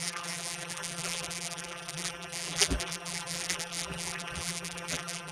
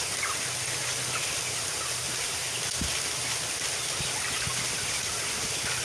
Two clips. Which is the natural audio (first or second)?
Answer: second